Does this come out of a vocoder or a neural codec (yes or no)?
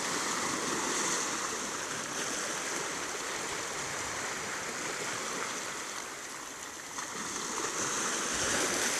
no